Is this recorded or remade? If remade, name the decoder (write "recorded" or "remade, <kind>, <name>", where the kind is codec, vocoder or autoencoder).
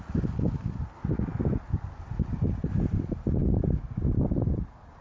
recorded